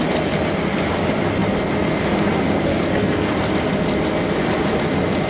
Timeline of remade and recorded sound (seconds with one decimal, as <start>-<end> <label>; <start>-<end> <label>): 0.0-2.7 recorded; 2.7-3.3 remade; 3.3-5.3 recorded